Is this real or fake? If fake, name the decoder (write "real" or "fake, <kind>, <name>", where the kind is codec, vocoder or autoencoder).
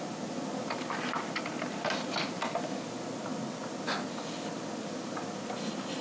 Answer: real